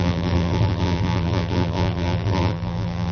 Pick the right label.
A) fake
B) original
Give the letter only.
A